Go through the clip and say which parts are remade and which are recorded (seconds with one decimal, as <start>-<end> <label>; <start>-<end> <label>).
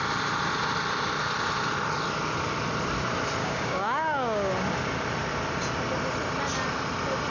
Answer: 0.0-3.4 recorded; 3.4-4.5 remade; 4.5-7.3 recorded